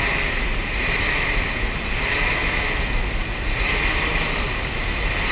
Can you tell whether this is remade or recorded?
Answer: recorded